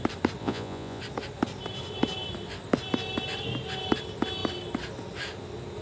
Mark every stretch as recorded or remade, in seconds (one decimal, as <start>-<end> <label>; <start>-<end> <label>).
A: 0.0-0.4 recorded; 0.4-1.0 remade; 1.0-5.8 recorded